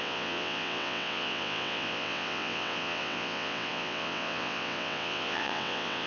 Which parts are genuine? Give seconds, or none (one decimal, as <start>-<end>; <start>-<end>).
none